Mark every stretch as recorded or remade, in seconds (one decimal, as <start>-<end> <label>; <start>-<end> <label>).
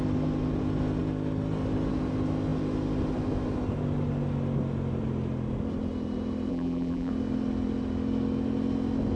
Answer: 0.0-6.5 recorded; 6.5-7.1 remade; 7.1-9.2 recorded